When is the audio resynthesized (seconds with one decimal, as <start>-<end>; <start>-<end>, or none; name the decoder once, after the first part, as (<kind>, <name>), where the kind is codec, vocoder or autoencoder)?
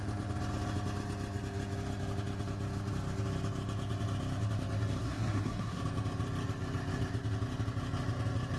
5.0-5.8 (codec, SNAC)